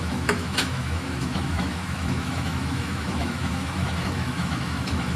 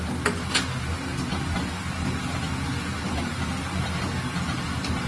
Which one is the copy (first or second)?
first